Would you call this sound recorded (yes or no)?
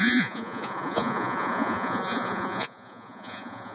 no